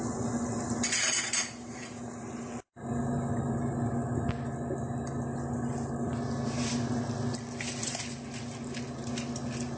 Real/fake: real